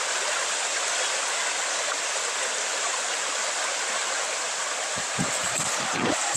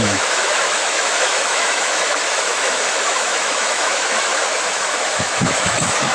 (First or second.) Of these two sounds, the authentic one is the first